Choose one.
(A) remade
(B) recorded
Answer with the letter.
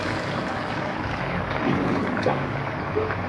A